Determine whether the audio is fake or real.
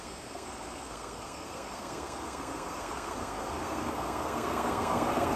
fake